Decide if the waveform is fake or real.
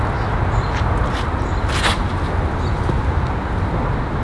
real